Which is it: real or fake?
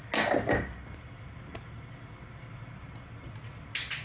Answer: real